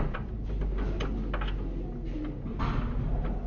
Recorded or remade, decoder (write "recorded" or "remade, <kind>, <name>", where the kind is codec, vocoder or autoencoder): recorded